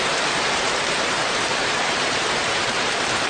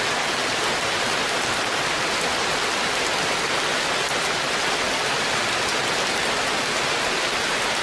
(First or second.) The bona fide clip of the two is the second